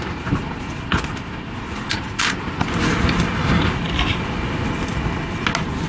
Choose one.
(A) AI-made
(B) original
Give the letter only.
B